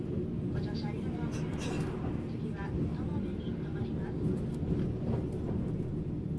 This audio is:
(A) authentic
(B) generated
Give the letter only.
A